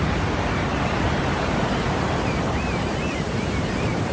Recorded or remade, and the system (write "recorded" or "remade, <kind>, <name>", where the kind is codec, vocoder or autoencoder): remade, vocoder, BigVGAN v2